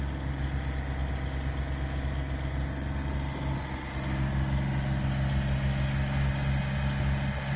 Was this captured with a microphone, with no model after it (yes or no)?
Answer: yes